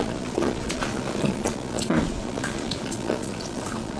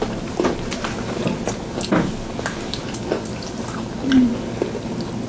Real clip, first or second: second